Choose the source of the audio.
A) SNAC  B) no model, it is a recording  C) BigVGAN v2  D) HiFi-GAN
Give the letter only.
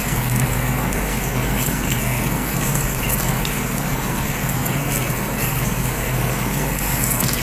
A